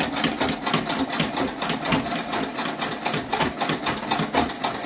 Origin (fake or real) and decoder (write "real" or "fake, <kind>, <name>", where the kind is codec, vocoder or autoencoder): real